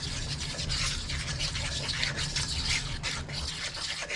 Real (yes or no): yes